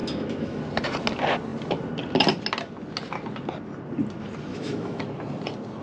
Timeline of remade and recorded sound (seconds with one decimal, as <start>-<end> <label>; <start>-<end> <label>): 0.0-0.6 remade; 0.6-4.5 recorded; 4.5-5.0 remade; 5.0-5.8 recorded